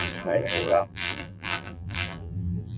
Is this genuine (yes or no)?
no